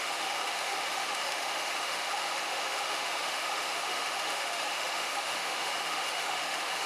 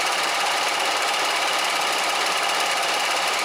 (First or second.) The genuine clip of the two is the second